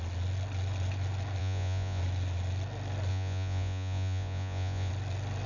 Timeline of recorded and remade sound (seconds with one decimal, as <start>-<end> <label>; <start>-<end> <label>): 0.0-1.4 recorded; 1.4-2.0 remade; 2.0-3.1 recorded; 3.1-4.9 remade; 4.9-5.5 recorded